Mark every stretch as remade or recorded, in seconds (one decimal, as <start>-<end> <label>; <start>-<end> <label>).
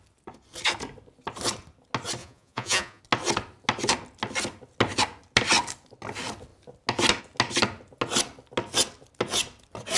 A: 0.0-2.2 recorded; 2.2-3.0 remade; 3.0-10.0 recorded